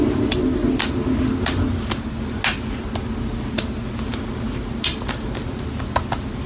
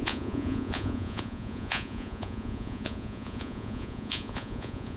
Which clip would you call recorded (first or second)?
first